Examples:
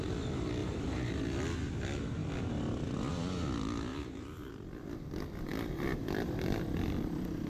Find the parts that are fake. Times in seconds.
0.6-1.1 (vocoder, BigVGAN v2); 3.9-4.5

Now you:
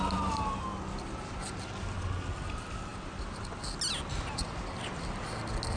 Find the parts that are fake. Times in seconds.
none

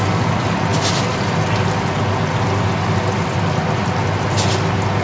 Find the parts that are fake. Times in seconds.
none

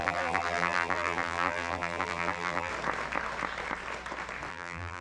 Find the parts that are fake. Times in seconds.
0.0-2.7 (vocoder, BigVGAN v2); 4.5-5.0